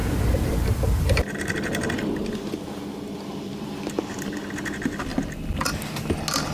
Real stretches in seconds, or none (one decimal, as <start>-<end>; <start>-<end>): 3.9-5.1; 5.7-6.5